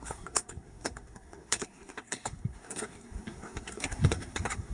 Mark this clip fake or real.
fake